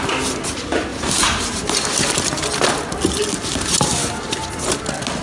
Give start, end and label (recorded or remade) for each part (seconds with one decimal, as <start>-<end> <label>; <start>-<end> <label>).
0.0-0.9 recorded; 0.9-1.8 remade; 1.8-5.2 recorded